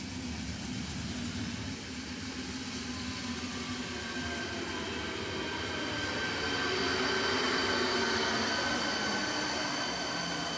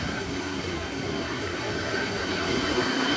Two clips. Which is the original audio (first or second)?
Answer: first